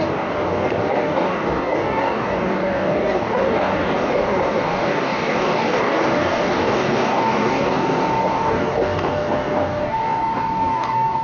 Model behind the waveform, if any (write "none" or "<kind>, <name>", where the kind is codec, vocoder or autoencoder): codec, DAC